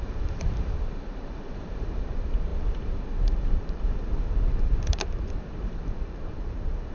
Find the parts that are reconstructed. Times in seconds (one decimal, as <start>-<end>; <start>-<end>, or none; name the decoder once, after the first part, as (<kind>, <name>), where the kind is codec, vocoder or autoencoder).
0.0-6.9 (vocoder, BigVGAN v2)